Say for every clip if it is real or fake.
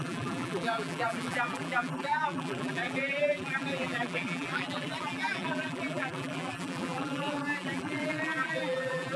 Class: fake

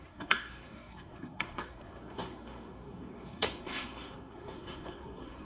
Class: fake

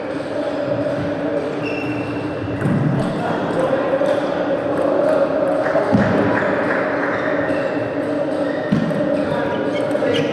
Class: real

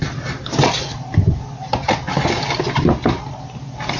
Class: real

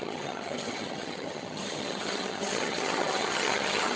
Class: fake